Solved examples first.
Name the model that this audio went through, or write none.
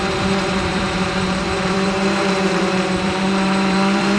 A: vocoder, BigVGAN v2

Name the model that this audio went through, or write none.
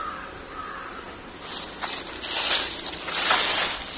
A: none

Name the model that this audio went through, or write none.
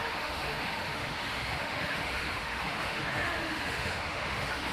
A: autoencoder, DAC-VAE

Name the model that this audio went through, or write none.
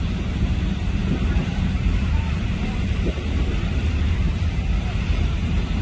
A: vocoder, BigVGAN v2